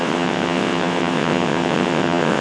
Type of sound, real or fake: fake